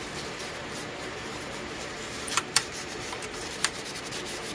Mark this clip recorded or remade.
remade